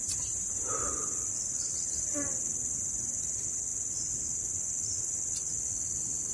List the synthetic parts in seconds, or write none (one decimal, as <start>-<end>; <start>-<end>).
0.0-0.8